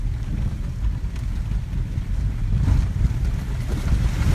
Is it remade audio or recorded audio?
recorded